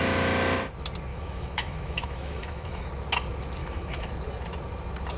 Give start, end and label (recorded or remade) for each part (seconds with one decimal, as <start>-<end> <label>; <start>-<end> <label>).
0.0-1.1 recorded; 1.1-2.8 remade; 2.8-3.6 recorded; 3.6-4.1 remade; 4.1-5.2 recorded